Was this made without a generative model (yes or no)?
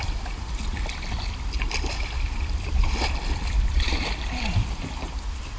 no